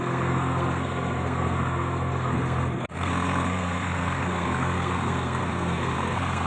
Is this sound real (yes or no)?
no